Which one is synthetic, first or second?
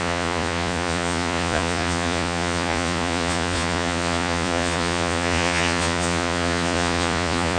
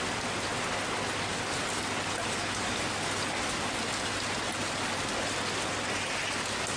first